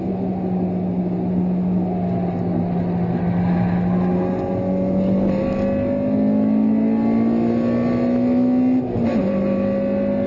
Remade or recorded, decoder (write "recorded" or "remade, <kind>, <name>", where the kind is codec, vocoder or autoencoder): recorded